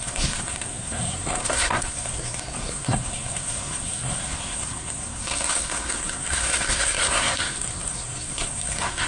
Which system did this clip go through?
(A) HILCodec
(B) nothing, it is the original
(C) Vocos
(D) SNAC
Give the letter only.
D